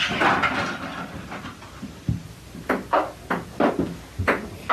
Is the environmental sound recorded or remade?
recorded